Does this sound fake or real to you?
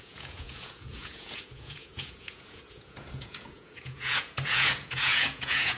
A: fake